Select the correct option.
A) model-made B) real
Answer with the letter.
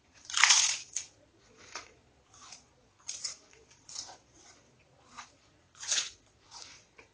A